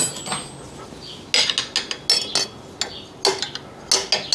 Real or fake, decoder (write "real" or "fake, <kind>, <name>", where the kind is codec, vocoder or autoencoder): real